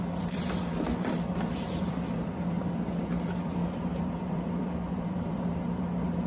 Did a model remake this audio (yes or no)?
yes